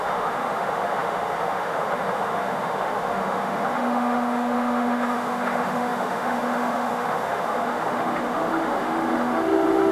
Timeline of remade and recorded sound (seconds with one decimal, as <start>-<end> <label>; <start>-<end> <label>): 0.0-9.9 remade